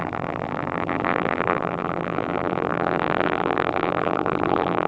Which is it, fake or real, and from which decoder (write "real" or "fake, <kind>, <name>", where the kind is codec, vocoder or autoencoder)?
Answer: fake, vocoder, BigVGAN v2